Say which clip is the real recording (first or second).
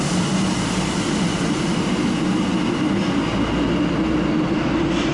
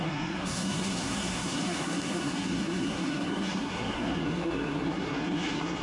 first